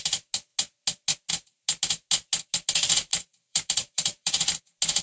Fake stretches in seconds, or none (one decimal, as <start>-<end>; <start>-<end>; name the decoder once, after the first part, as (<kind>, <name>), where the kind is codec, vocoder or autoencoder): 3.1-4.6 (vocoder, BigVGAN v2)